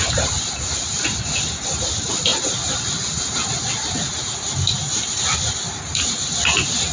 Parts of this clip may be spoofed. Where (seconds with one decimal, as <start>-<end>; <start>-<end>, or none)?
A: none